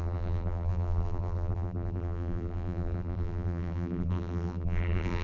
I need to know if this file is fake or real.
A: fake